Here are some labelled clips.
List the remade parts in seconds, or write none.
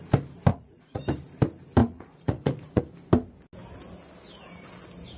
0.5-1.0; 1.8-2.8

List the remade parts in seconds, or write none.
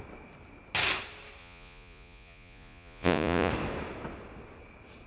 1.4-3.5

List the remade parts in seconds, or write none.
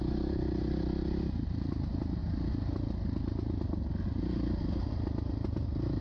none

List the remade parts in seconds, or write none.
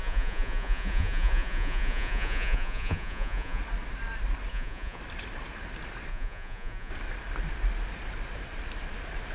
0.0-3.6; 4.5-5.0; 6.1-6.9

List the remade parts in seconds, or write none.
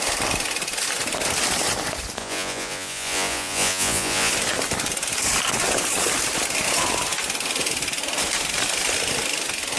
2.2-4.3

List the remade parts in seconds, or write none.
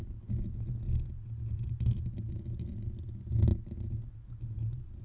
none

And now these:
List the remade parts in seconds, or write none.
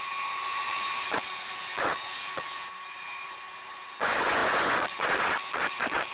0.0-6.1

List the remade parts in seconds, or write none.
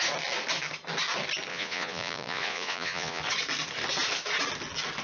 1.5-3.2